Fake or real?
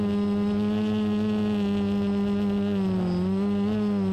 real